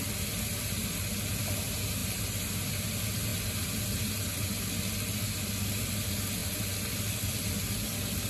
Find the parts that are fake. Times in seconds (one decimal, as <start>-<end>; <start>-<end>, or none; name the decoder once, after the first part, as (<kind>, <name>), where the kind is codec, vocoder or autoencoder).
none